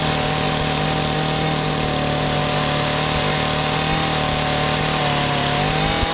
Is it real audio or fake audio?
real